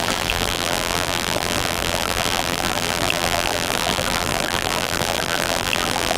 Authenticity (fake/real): fake